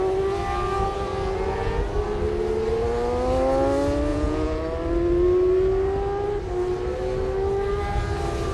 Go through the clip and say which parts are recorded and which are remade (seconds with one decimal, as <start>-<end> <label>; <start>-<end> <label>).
0.0-4.1 recorded; 4.1-4.6 remade; 4.6-8.5 recorded